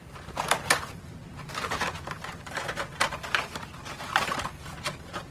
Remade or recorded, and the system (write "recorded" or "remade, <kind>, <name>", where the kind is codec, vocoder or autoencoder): remade, vocoder, BigVGAN v2